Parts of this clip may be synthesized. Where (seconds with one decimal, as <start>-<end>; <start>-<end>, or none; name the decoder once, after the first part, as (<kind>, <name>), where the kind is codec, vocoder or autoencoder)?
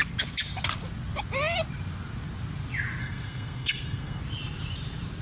3.0-4.2 (codec, SNAC)